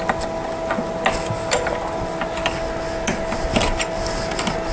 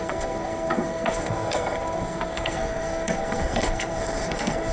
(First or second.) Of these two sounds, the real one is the first